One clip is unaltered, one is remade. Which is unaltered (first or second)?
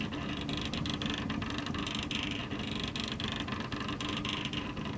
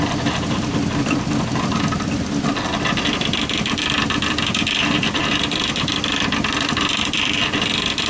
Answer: first